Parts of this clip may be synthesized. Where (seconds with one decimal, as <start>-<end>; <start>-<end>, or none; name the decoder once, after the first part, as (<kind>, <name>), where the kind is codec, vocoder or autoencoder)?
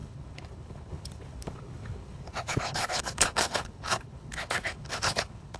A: 0.0-5.6 (codec, HILCodec)